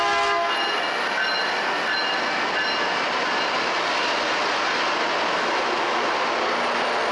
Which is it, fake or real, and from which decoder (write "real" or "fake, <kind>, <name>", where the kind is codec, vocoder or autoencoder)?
real